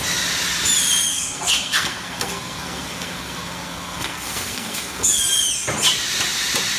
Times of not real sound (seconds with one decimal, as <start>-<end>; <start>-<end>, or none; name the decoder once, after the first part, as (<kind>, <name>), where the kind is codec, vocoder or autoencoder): 1.1-5.2 (codec, SNAC)